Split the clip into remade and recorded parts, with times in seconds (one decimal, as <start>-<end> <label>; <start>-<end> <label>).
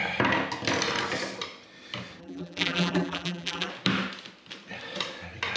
0.0-2.2 recorded; 2.2-3.7 remade; 3.7-5.6 recorded